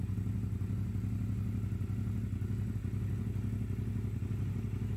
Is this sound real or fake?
real